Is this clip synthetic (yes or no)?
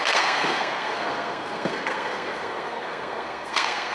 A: yes